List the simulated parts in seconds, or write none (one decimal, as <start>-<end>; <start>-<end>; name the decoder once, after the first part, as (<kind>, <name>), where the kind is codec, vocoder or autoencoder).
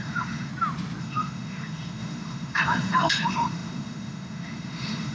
0.0-0.5 (autoencoder, DAC-VAE); 1.0-5.1